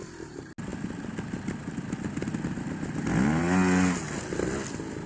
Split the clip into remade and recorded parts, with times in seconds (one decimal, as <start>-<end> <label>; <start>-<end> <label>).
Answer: 0.0-5.1 recorded